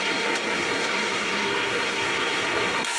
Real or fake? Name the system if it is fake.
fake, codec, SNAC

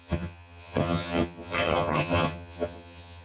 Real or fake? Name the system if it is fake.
fake, vocoder, HiFi-GAN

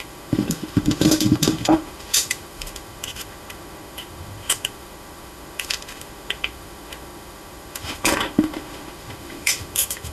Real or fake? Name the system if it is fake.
fake, autoencoder, DAC-VAE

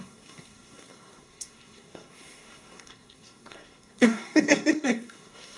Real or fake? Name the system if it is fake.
fake, codec, SNAC